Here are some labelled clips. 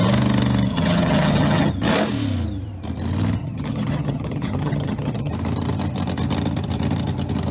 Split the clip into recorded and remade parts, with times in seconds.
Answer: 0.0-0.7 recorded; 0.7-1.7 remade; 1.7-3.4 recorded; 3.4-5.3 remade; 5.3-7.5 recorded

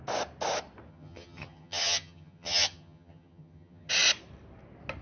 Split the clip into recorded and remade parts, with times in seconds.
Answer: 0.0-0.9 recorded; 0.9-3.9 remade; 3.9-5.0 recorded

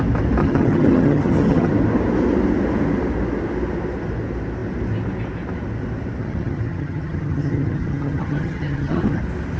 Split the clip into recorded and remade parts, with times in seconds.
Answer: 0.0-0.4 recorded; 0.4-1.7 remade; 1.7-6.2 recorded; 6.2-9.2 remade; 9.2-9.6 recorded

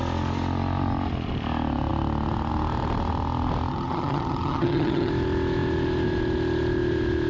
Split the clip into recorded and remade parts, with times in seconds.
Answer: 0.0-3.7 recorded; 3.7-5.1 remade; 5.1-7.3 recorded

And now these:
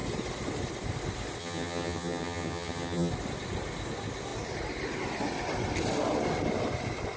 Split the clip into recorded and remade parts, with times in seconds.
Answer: 0.0-1.4 recorded; 1.4-3.1 remade; 3.1-7.2 recorded

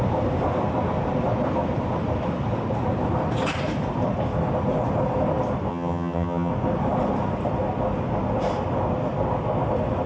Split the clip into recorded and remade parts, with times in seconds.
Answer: 0.0-5.7 recorded; 5.7-6.5 remade; 6.5-10.1 recorded

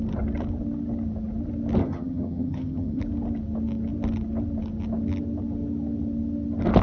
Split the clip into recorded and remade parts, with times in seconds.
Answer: 0.0-1.8 recorded; 1.8-3.0 remade; 3.0-6.8 recorded

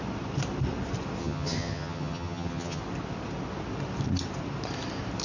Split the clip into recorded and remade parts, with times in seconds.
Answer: 0.0-1.2 recorded; 1.2-2.8 remade; 2.8-5.2 recorded